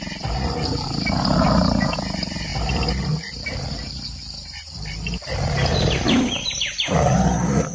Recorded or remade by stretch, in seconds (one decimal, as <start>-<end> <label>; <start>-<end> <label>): 0.0-7.7 recorded